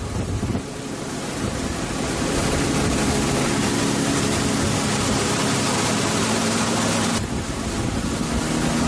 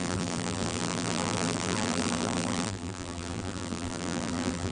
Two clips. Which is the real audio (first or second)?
first